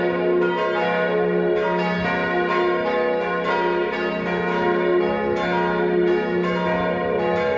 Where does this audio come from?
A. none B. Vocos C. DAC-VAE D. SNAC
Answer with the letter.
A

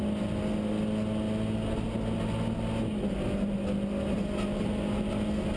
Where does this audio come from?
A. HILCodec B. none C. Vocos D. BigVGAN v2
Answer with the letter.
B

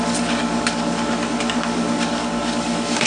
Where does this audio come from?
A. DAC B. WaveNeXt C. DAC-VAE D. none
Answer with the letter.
A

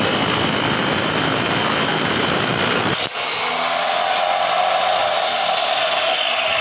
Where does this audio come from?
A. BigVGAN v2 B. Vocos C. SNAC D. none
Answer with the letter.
D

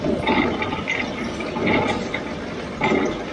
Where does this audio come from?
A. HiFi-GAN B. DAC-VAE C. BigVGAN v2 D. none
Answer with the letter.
C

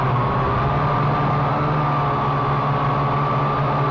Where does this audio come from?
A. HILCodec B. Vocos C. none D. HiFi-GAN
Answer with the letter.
C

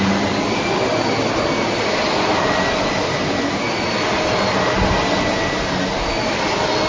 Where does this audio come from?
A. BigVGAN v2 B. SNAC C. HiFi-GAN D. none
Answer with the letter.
D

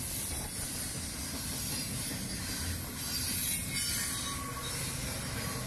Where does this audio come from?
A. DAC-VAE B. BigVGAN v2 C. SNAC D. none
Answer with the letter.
D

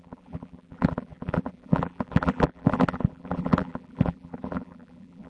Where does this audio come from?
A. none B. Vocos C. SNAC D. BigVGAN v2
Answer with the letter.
D